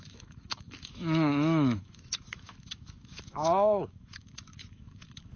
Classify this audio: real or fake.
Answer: fake